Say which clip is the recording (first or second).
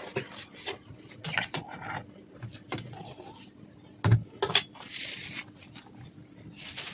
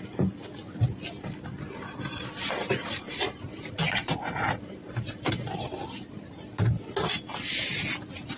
first